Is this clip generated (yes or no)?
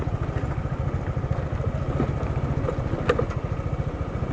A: no